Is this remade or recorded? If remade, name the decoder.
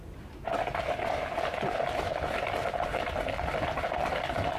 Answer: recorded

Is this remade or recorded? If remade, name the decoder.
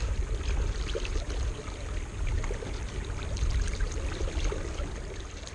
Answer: recorded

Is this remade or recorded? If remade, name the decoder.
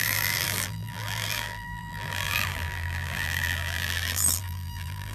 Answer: remade, vocoder, BigVGAN v2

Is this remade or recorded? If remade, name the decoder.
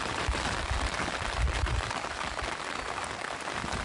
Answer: recorded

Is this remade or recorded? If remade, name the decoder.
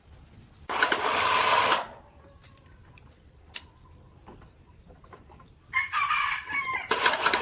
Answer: recorded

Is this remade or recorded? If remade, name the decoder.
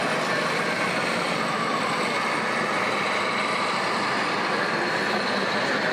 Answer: remade, vocoder, BigVGAN v2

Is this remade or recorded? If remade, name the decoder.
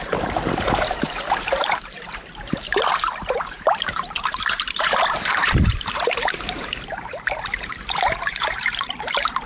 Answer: remade, vocoder, BigVGAN v2